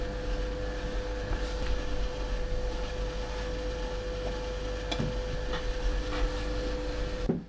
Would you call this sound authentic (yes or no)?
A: yes